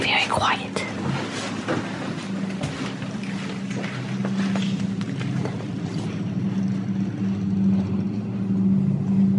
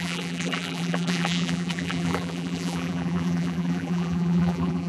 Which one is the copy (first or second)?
second